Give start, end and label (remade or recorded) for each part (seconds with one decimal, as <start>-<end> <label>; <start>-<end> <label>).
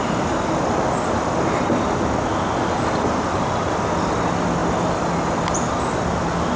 0.0-6.6 recorded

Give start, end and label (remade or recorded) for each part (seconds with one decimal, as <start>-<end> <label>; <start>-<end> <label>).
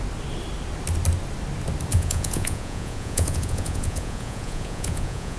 0.0-1.9 recorded; 1.9-5.4 remade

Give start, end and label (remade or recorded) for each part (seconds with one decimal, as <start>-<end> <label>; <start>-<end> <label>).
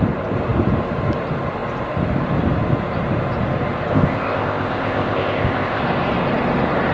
0.0-3.9 recorded; 3.9-5.8 remade; 5.8-6.9 recorded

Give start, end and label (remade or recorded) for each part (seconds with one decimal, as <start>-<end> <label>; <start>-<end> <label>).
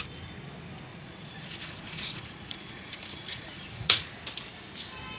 0.0-0.9 recorded; 0.9-4.0 remade; 4.0-5.2 recorded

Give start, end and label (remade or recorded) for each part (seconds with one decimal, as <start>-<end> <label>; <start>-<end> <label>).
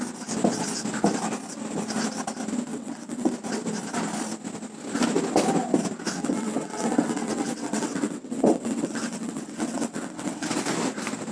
0.0-2.7 recorded; 2.7-3.3 remade; 3.3-6.2 recorded; 6.2-10.6 remade; 10.6-11.3 recorded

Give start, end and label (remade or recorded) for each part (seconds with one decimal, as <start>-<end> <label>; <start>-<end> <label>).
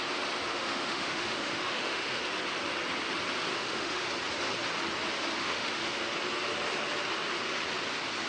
0.0-0.5 recorded; 0.5-2.2 remade; 2.2-3.5 recorded; 3.5-4.1 remade; 4.1-5.4 recorded; 5.4-6.0 remade; 6.0-8.3 recorded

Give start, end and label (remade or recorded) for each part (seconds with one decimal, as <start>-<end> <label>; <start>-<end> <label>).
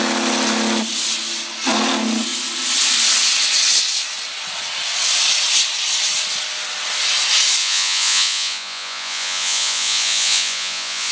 0.0-7.6 recorded; 7.6-11.1 remade